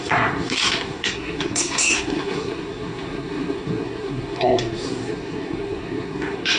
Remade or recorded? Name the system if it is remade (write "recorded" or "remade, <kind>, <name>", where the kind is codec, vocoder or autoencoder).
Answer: remade, codec, SNAC